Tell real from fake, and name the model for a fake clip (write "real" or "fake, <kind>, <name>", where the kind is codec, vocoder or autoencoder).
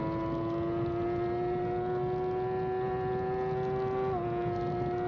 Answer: real